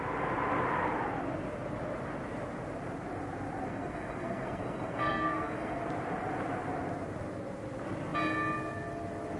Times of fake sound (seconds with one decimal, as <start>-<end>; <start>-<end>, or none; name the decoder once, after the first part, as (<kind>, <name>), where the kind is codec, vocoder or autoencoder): 3.7-5.8 (codec, SNAC)

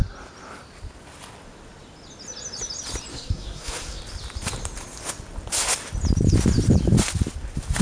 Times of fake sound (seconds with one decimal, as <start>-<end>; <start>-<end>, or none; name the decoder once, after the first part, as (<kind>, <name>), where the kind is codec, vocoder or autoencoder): 3.1-4.0 (codec, SNAC)

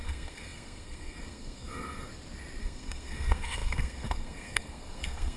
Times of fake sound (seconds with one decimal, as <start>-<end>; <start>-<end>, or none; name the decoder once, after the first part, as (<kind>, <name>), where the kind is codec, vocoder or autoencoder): 0.0-2.1 (codec, SNAC); 2.6-5.4